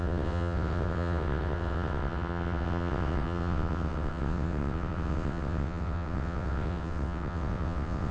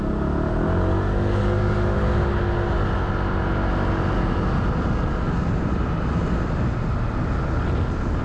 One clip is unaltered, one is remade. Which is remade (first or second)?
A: first